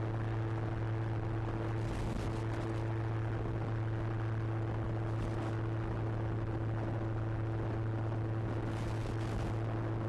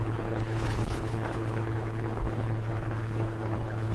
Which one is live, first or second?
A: first